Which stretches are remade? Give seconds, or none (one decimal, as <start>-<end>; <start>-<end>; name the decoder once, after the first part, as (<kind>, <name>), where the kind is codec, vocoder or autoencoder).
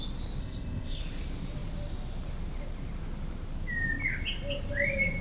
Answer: 0.4-1.0 (codec, ZipCodec)